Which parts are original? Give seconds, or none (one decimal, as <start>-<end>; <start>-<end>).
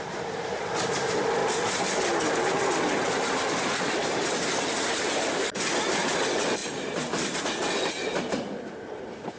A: 0.0-6.6; 7.4-9.4